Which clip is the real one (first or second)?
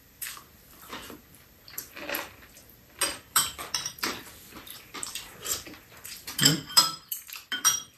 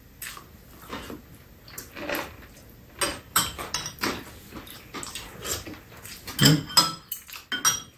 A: second